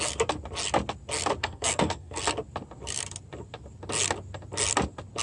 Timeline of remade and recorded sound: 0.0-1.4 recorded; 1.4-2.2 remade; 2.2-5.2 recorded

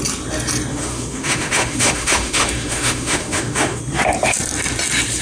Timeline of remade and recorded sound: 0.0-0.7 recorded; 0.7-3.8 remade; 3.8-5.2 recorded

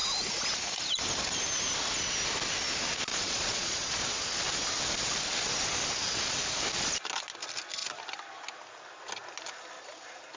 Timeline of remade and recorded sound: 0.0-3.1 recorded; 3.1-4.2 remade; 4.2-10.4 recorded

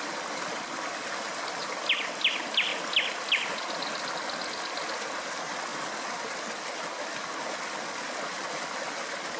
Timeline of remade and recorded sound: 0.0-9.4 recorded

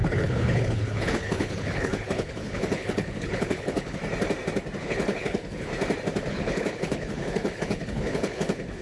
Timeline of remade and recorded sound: 0.0-4.0 remade; 4.0-4.8 recorded; 4.8-5.7 remade; 5.7-6.3 recorded; 6.3-8.8 remade

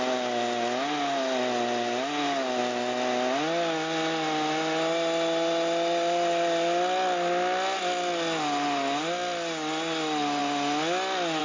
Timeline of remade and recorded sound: 0.0-11.4 recorded